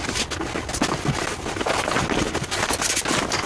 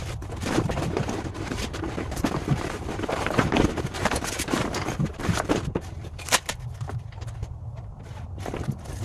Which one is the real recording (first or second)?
first